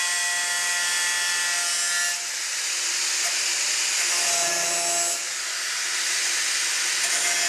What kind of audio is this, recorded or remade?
recorded